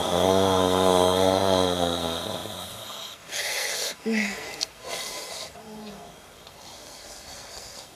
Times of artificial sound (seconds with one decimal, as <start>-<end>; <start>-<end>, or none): 0.0-8.0